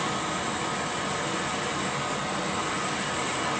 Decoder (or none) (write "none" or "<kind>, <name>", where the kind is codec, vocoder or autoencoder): none